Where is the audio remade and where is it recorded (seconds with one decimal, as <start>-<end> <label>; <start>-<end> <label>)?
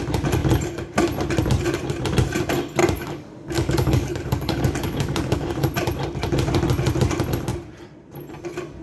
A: 0.0-2.8 recorded; 2.8-5.5 remade; 5.5-8.8 recorded